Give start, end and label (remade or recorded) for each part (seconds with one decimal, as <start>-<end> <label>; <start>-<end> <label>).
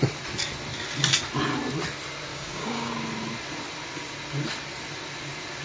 0.0-2.3 recorded; 2.3-2.9 remade; 2.9-5.6 recorded